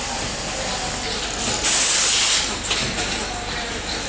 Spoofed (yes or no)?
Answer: no